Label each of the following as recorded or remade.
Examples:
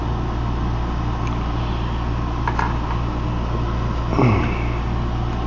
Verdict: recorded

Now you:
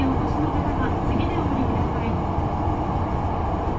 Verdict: recorded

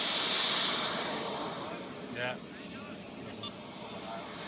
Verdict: recorded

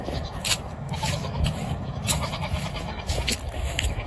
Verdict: remade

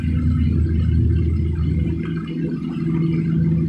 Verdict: recorded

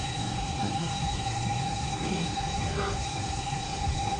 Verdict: remade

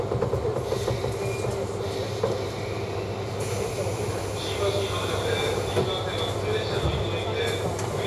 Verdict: recorded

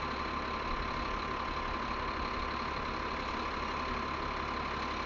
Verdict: recorded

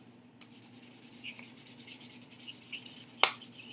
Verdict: recorded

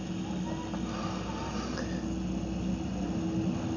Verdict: recorded